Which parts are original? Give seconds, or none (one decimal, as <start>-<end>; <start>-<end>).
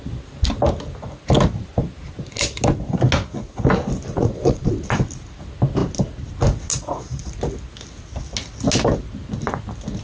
0.0-4.1; 4.7-6.7; 7.3-10.0